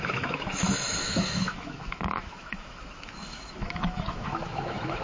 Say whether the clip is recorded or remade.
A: remade